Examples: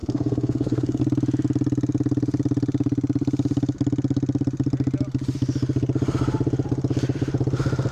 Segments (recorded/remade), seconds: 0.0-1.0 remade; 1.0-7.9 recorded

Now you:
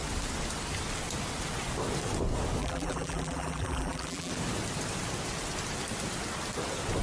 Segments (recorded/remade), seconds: 0.0-2.6 recorded; 2.6-4.3 remade; 4.3-7.0 recorded

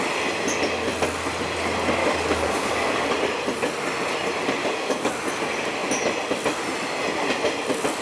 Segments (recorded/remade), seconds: 0.0-2.0 recorded; 2.0-3.1 remade; 3.1-4.6 recorded; 4.6-5.1 remade; 5.1-8.0 recorded

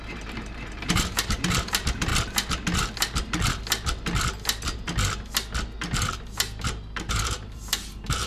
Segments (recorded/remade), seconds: 0.0-2.1 remade; 2.1-7.1 recorded; 7.1-8.3 remade

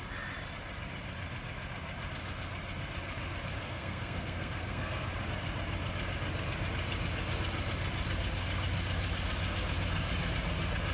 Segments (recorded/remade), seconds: 0.0-3.6 recorded; 3.6-5.1 remade; 5.1-10.9 recorded